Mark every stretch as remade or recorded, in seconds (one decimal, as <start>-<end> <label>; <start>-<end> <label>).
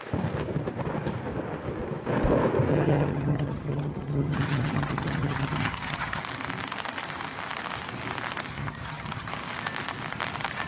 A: 0.0-2.7 recorded; 2.7-6.2 remade; 6.2-8.5 recorded; 8.5-9.3 remade; 9.3-10.7 recorded